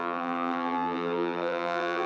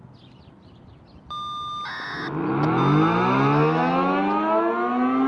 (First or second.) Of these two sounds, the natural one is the second